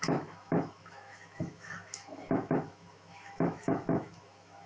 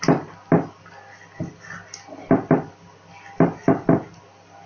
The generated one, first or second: first